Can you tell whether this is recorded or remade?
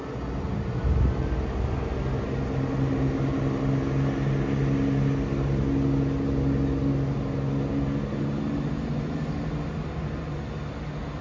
recorded